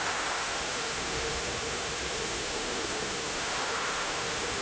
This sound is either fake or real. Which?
fake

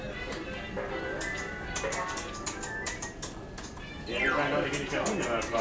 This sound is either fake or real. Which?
real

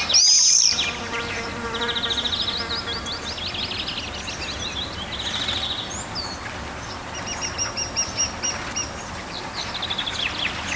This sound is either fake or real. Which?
real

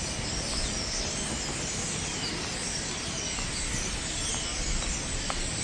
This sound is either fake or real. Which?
real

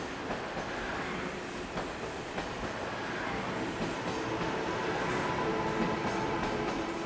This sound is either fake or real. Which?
real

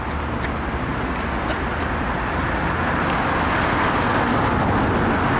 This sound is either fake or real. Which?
real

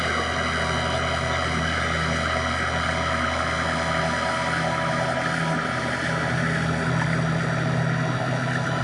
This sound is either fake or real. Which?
real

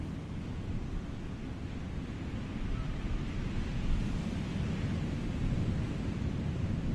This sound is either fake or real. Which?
real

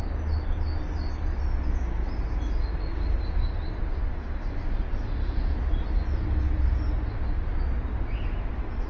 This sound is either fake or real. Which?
real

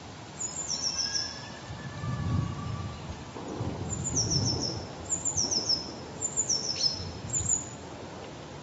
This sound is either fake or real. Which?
real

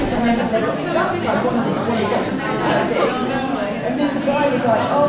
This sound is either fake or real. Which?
real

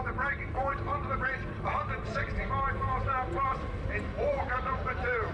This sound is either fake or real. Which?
real